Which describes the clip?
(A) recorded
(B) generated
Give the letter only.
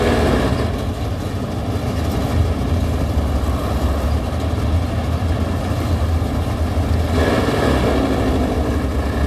A